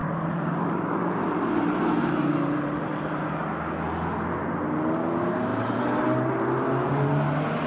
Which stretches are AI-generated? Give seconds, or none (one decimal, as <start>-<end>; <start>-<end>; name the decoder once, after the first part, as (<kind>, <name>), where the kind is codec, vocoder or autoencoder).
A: 0.0-3.2 (vocoder, BigVGAN v2)